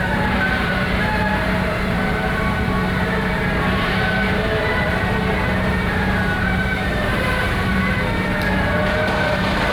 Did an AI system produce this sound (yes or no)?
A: yes